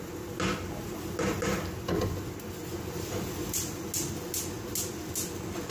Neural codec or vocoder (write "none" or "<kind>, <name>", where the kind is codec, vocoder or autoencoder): none